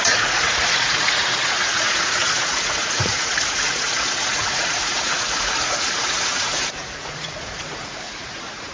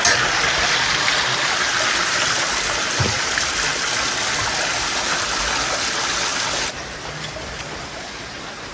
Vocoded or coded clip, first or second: first